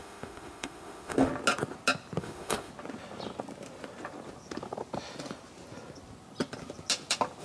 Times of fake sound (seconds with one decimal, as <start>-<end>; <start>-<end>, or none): 0.0-1.3; 2.2-2.7